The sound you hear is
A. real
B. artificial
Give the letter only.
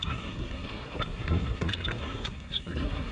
B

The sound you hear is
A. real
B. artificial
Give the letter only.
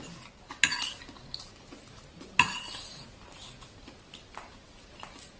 A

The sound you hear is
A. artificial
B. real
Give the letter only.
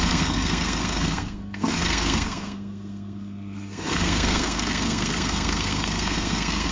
A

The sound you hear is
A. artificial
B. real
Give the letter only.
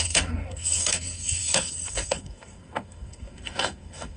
A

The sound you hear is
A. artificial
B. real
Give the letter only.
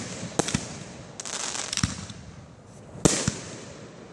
B